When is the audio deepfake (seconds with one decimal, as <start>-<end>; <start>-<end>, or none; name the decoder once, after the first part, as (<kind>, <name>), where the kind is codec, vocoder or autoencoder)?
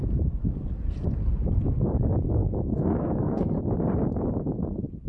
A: 2.4-3.5 (codec, SNAC)